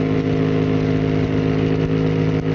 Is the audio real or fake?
real